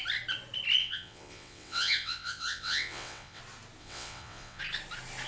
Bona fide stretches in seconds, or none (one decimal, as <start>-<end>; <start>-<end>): 0.0-0.8; 3.4-3.8; 4.6-5.3